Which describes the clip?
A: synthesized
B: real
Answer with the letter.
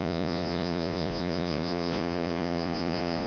A